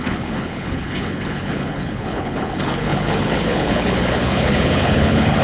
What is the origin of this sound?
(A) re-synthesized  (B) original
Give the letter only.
A